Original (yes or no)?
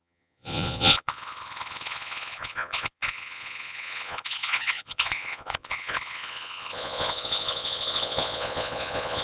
no